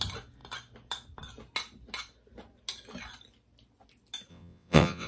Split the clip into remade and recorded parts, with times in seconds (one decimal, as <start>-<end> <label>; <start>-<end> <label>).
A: 0.0-4.3 recorded; 4.3-5.1 remade